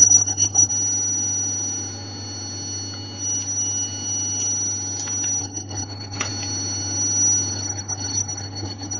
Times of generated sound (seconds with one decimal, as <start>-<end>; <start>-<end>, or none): 0.0-0.7; 5.4-6.3; 7.5-9.0

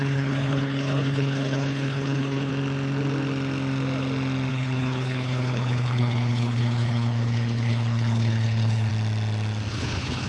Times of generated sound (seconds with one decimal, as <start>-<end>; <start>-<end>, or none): 0.0-2.5; 4.5-8.9; 9.7-10.3

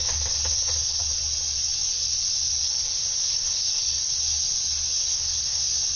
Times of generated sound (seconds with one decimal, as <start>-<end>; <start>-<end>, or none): 0.0-1.0; 2.6-4.1; 5.0-5.6

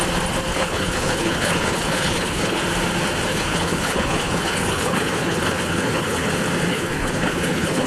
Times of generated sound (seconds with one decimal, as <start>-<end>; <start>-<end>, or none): 0.5-2.6; 3.3-6.3; 6.7-7.9

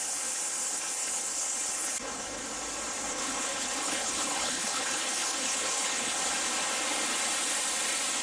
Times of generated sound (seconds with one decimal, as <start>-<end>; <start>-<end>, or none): 0.0-2.4; 3.1-6.2